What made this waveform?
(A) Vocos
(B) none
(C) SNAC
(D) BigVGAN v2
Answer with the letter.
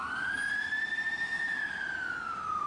B